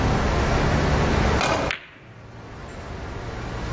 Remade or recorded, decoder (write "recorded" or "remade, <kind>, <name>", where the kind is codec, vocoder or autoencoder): recorded